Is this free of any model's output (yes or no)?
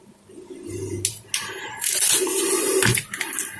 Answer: yes